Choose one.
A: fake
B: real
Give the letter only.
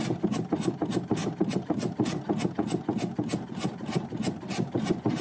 B